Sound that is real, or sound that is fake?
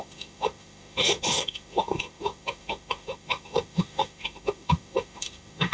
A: fake